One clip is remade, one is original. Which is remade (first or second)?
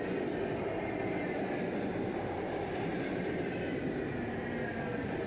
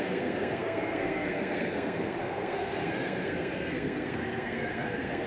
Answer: second